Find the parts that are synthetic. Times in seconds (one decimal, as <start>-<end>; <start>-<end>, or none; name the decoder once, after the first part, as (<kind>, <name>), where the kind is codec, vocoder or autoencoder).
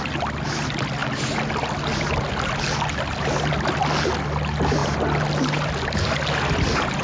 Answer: none